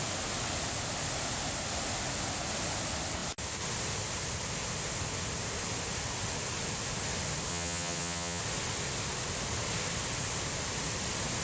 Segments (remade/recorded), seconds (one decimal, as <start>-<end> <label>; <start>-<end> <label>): 0.0-7.5 recorded; 7.5-8.4 remade; 8.4-11.4 recorded